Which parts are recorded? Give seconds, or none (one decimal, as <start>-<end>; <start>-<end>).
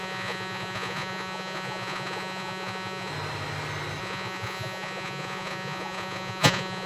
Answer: 3.1-4.0